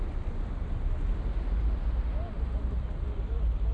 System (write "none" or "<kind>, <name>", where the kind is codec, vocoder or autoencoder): none